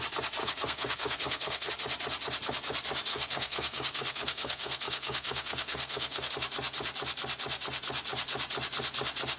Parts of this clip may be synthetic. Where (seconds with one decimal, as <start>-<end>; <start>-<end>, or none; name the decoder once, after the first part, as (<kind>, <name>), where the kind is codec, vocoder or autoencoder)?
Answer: 0.4-1.7 (codec, SNAC); 3.1-6.3